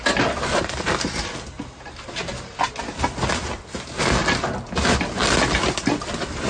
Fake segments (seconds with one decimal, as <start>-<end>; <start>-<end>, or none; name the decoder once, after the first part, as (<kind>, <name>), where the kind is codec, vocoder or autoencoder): none